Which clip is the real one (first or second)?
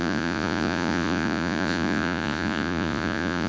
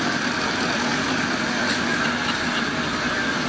second